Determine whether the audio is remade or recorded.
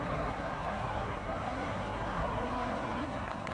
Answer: remade